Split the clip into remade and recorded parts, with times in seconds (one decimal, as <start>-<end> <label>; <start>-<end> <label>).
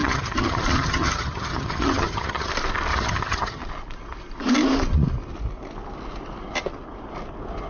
0.0-2.5 remade; 2.5-2.9 recorded; 2.9-3.6 remade; 3.6-7.7 recorded